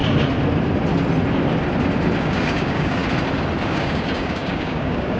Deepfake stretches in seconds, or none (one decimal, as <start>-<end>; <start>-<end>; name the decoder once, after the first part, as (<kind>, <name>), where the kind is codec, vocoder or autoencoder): 2.2-3.0 (codec, DAC); 3.6-5.2